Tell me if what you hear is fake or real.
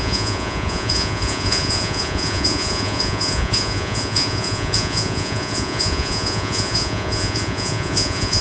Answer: fake